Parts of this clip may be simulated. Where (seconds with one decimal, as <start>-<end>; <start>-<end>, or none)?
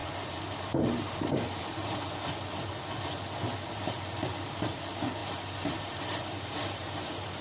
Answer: 0.0-2.0; 3.6-4.6; 5.2-7.4